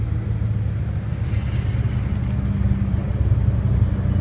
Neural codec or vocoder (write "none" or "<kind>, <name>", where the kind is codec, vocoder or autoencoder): none